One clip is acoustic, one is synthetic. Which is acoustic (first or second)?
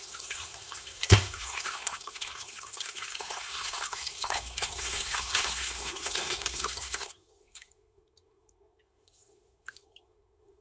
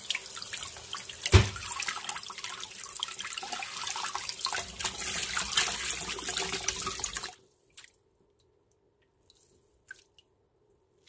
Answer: second